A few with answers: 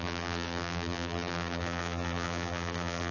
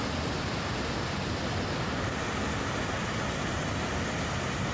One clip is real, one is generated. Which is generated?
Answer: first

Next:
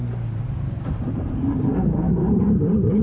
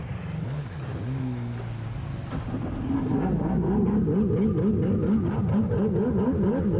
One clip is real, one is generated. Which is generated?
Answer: first